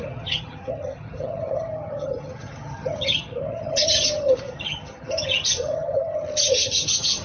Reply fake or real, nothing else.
fake